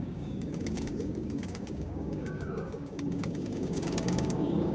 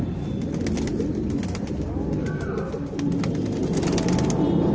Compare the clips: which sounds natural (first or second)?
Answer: second